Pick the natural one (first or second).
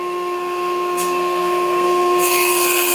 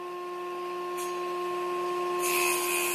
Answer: second